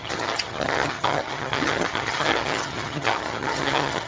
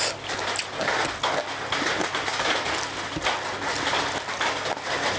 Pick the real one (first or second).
second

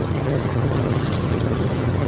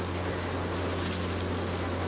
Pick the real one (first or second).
second